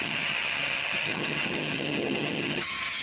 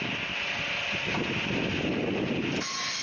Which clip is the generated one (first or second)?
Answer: first